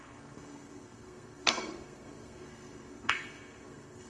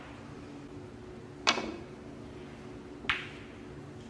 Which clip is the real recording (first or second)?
second